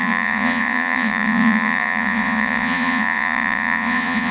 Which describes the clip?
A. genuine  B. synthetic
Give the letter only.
B